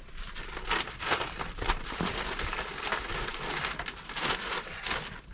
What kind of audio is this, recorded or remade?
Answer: recorded